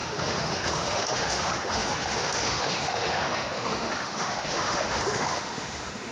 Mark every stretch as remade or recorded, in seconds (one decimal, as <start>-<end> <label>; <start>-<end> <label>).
0.0-6.1 remade